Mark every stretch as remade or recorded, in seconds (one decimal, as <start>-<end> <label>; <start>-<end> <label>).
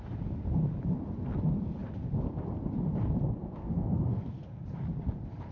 0.0-3.4 recorded; 3.4-4.6 remade; 4.6-5.5 recorded